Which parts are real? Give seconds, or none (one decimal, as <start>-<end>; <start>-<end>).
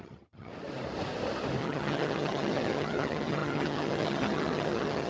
0.5-1.6